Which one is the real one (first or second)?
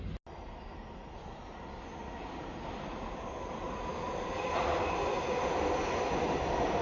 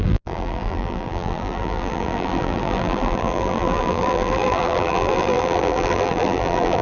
first